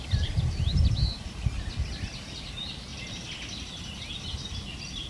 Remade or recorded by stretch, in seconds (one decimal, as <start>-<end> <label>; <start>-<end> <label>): 0.0-5.1 recorded